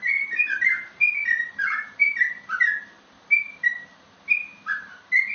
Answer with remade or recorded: recorded